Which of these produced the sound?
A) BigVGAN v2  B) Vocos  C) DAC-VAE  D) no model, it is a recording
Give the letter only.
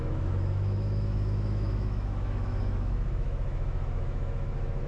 C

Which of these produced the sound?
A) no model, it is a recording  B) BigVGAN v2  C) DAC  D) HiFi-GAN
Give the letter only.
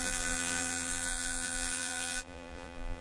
B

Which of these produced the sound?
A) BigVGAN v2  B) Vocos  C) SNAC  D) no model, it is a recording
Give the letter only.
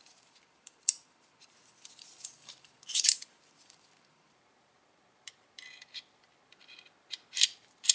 A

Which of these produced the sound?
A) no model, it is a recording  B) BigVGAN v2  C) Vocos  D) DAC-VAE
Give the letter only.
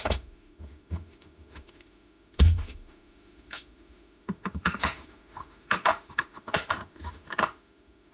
D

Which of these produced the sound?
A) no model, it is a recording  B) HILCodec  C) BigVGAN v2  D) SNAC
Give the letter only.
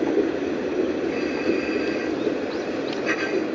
A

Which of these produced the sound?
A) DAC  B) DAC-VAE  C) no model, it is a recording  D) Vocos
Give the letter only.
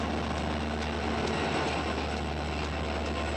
C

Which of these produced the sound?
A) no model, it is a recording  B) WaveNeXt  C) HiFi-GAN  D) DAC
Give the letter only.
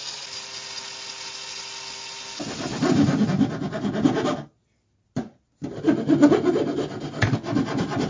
A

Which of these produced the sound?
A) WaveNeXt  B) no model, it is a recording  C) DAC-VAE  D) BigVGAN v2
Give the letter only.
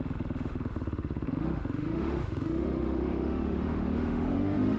C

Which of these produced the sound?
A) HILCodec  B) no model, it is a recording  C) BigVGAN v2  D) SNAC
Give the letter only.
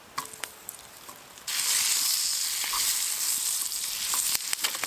B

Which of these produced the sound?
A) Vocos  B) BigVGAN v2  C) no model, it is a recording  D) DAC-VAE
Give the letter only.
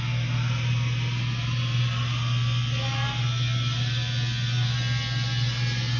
C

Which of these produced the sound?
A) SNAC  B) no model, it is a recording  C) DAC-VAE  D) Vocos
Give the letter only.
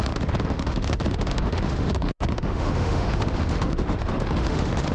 C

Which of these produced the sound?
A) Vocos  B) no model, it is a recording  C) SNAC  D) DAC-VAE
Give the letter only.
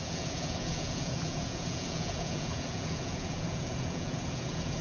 A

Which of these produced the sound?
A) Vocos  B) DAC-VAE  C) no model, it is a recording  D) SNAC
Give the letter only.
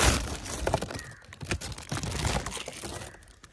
C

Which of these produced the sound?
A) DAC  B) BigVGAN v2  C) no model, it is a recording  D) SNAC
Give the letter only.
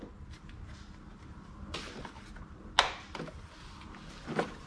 C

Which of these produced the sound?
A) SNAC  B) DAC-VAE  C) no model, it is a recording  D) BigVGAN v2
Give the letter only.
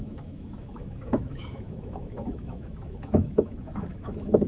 B